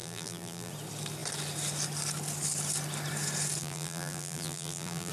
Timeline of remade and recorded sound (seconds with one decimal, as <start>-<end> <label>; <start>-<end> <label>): 0.0-0.7 remade; 0.7-3.6 recorded; 3.6-5.1 remade